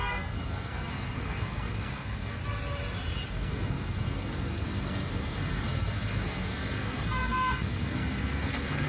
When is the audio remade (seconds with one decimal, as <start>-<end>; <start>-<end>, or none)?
0.0-2.4; 3.3-8.9